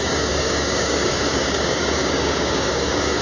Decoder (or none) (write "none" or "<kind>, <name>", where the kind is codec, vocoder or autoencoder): codec, DAC